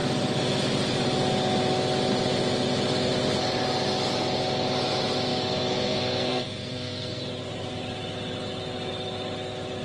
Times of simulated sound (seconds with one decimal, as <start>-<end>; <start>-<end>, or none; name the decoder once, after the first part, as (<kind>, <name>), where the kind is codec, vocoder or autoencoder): 5.3-7.2 (codec, SNAC)